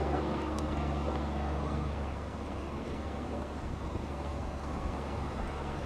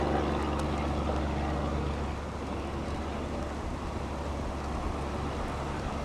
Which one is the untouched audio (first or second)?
second